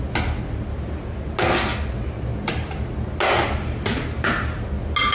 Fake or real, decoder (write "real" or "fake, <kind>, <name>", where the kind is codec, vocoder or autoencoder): real